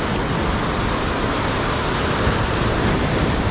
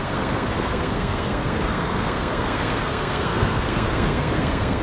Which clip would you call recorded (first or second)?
first